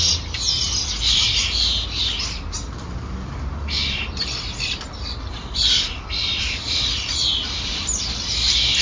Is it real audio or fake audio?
real